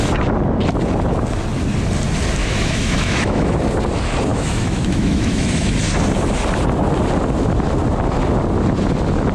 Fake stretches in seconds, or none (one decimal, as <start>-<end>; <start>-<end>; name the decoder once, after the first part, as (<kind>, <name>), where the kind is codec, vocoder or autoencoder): 2.4-3.5 (autoencoder, DAC-VAE); 4.3-5.8